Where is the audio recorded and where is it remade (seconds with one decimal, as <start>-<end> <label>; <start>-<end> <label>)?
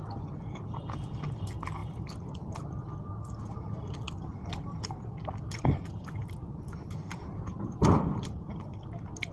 0.0-9.3 recorded